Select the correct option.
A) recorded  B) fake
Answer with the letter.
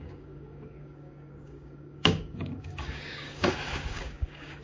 B